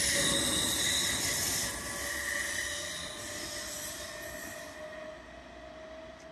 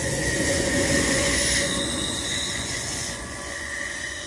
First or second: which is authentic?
first